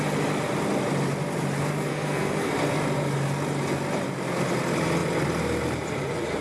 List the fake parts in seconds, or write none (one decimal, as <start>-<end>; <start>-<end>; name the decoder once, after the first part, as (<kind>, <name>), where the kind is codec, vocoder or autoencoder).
1.9-2.5 (codec, SNAC)